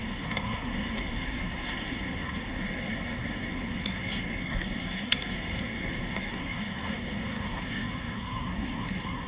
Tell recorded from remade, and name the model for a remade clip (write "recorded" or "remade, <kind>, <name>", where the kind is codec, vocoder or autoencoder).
remade, codec, SNAC